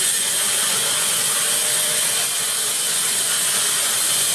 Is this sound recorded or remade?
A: remade